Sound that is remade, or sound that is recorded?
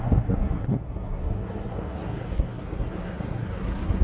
remade